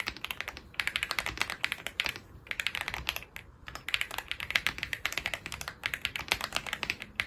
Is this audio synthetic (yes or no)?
yes